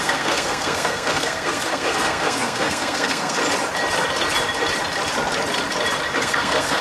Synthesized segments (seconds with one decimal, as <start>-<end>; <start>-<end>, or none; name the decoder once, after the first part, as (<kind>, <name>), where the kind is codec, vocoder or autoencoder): 0.0-3.4 (codec, SNAC); 6.2-6.8